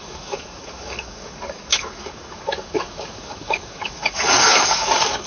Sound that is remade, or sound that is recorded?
remade